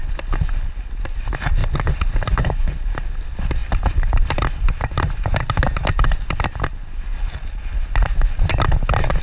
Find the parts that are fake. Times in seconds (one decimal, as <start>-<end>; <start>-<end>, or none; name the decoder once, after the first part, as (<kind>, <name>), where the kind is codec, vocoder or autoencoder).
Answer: 3.6-4.9 (vocoder, BigVGAN v2)